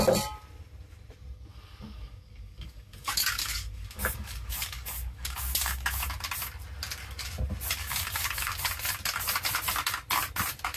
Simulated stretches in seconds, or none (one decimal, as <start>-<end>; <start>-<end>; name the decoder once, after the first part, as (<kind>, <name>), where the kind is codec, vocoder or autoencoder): 1.5-6.1 (codec, DAC); 7.8-8.5